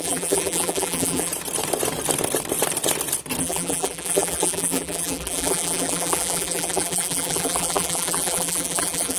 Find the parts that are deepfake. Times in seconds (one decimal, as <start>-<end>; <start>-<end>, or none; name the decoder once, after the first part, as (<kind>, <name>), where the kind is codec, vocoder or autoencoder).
0.0-1.3 (vocoder, BigVGAN v2); 3.4-9.2